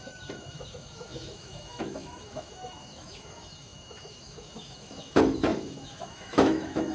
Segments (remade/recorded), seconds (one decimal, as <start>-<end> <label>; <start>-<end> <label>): 0.0-6.9 remade